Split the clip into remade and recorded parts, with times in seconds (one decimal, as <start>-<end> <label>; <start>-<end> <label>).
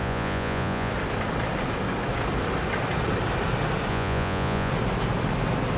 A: 0.0-0.9 remade; 0.9-3.9 recorded; 3.9-4.7 remade; 4.7-5.8 recorded